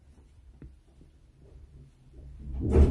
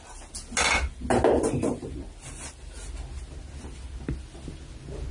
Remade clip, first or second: first